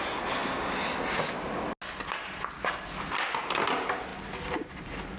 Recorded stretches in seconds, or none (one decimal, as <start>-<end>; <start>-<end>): 0.0-5.2